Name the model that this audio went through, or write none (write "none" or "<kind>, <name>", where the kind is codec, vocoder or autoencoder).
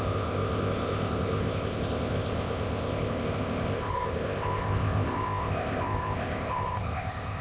codec, ZipCodec